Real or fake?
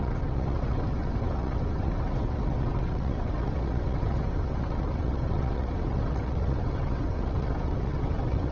fake